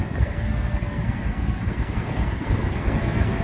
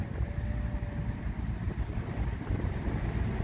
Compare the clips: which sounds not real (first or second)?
first